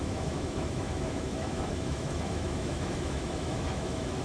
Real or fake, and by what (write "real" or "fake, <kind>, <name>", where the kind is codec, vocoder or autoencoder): fake, autoencoder, DAC-VAE